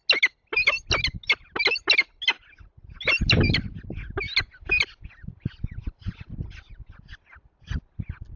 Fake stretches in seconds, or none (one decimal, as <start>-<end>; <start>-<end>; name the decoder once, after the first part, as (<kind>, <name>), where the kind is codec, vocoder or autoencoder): none